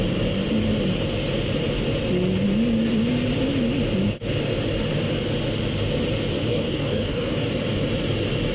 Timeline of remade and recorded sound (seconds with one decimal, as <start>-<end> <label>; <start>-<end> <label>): 0.0-6.5 recorded; 6.5-7.5 remade; 7.5-8.5 recorded